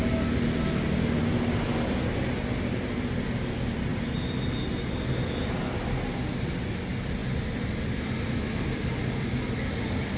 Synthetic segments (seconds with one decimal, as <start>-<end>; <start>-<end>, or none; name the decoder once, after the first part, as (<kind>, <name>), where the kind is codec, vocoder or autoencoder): none